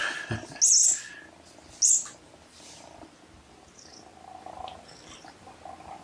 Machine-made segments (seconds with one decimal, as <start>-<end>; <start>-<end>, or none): none